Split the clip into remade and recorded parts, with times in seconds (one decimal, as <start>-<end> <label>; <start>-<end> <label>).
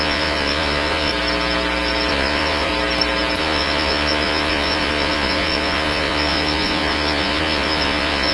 0.0-1.1 remade; 1.1-2.1 recorded; 2.1-2.7 remade; 2.7-3.4 recorded; 3.4-8.3 remade